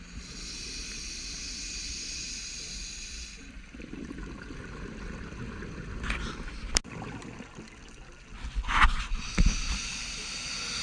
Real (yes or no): yes